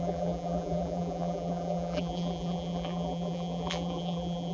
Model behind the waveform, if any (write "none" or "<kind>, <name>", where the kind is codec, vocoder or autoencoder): vocoder, BigVGAN v2